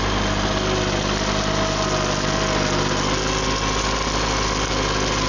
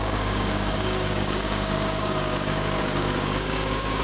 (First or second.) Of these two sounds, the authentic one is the first